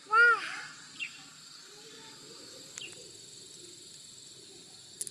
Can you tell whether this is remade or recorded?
recorded